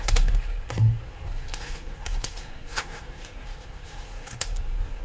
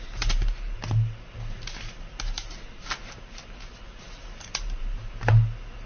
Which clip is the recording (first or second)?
second